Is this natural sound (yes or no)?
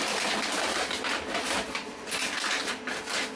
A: yes